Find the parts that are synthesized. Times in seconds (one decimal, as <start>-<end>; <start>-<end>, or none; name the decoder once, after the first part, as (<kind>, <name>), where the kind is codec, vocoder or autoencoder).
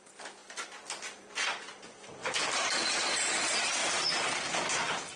2.2-2.9 (vocoder, BigVGAN v2); 3.8-4.5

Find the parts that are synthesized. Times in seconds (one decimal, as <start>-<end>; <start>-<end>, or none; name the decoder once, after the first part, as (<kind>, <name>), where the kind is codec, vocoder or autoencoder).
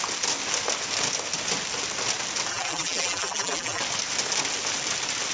2.5-3.8 (vocoder, BigVGAN v2)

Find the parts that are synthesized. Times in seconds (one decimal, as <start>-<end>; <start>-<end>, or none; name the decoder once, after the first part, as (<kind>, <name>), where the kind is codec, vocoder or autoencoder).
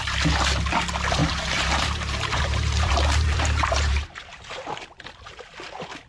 1.2-4.9 (vocoder, BigVGAN v2)